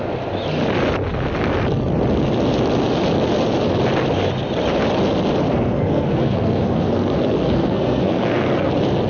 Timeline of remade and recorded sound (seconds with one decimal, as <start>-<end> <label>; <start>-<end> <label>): 0.0-5.5 recorded; 5.5-8.7 remade; 8.7-9.1 recorded